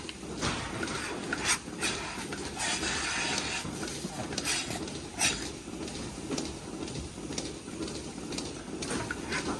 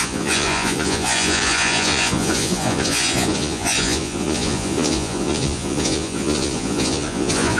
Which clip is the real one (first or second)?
first